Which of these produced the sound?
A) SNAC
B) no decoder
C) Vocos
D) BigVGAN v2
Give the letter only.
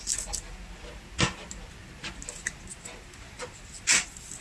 B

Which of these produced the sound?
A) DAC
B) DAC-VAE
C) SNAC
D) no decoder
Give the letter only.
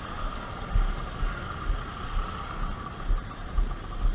D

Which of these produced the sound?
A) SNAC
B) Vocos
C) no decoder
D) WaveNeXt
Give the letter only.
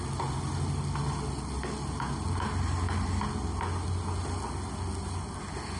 C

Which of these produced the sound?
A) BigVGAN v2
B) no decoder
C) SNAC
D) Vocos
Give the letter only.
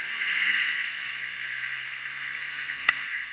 C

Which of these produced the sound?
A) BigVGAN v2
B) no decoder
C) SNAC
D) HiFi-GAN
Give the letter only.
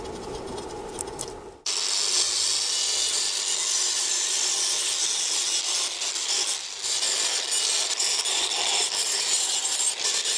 B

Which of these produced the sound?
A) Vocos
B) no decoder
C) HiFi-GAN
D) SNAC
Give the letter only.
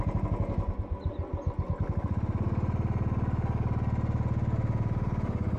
B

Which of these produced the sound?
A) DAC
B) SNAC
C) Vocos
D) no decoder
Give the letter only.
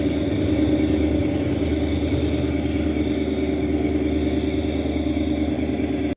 D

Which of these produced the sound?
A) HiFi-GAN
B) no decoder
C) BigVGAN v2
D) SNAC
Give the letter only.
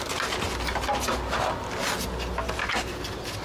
B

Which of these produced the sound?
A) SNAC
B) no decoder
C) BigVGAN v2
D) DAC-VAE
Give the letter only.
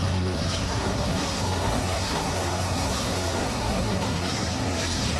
A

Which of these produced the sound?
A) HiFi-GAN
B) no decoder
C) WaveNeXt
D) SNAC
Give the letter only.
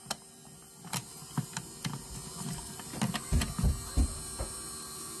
B